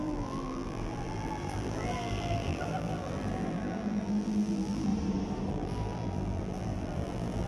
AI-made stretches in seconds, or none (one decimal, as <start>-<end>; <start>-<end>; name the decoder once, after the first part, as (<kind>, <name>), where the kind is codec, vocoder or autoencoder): 0.0-4.9 (vocoder, BigVGAN v2); 5.5-7.5